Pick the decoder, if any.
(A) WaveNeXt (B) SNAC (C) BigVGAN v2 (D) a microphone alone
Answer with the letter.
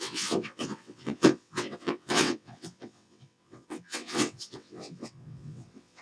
A